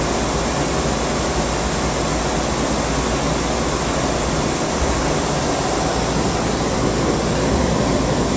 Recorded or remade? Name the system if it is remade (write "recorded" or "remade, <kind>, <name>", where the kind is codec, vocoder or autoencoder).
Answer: recorded